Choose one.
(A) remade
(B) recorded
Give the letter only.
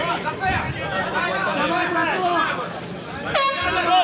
B